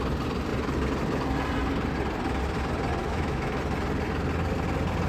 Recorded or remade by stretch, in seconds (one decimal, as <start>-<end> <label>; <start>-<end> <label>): 0.0-3.0 recorded; 3.0-3.6 remade; 3.6-5.1 recorded

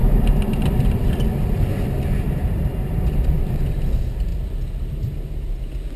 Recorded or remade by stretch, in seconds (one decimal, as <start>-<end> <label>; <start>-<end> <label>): 0.0-3.2 remade; 3.2-6.0 recorded

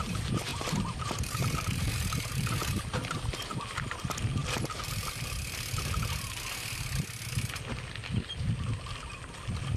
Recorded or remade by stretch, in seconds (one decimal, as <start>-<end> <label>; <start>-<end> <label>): 0.0-0.5 recorded; 0.5-3.2 remade; 3.2-9.8 recorded

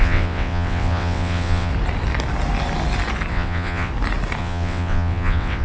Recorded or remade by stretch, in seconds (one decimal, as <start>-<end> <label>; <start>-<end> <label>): 0.0-1.7 remade; 1.7-3.3 recorded; 3.3-3.9 remade; 3.9-4.4 recorded; 4.4-5.6 remade

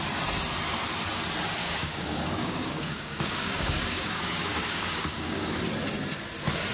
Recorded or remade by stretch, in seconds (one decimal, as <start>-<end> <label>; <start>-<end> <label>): 0.0-1.6 recorded; 1.6-5.6 remade; 5.6-6.7 recorded

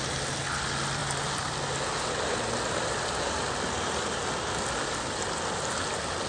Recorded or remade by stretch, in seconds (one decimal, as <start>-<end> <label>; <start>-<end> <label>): 0.0-6.3 recorded

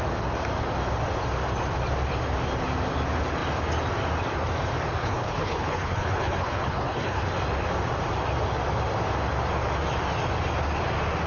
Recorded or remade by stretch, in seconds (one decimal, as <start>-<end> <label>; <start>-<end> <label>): 0.0-5.0 recorded; 5.0-7.3 remade; 7.3-11.3 recorded

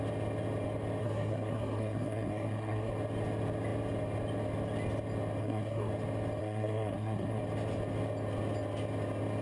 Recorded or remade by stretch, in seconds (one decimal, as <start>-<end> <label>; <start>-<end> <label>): 0.0-1.0 recorded; 1.0-2.9 remade; 2.9-5.4 recorded; 5.4-5.9 remade; 5.9-6.4 recorded; 6.4-7.4 remade; 7.4-9.4 recorded